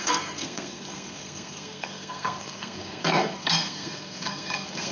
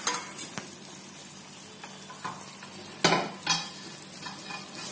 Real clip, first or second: second